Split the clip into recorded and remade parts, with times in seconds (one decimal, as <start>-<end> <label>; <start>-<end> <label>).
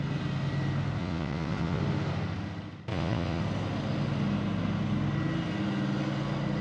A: 0.0-1.0 recorded; 1.0-1.8 remade; 1.8-2.9 recorded; 2.9-3.4 remade; 3.4-6.6 recorded